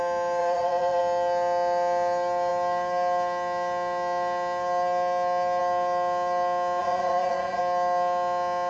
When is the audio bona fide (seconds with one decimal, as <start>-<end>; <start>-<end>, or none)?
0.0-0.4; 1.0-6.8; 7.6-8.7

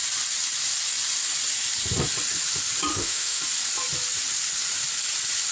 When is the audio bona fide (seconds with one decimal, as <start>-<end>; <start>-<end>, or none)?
0.0-2.9; 3.4-5.5

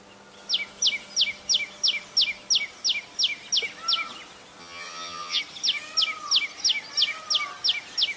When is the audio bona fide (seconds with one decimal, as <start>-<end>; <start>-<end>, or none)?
0.0-4.6; 5.4-8.2

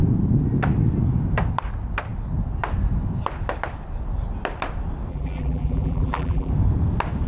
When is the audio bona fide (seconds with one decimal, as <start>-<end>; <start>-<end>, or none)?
0.0-5.1; 6.5-7.3